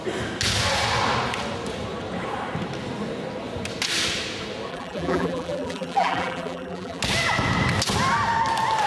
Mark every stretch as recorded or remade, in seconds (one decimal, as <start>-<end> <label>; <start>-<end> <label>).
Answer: 0.0-4.7 recorded; 4.7-7.0 remade; 7.0-8.9 recorded